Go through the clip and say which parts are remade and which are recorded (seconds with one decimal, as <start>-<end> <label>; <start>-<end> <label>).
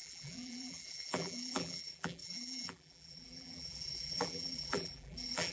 0.0-5.5 remade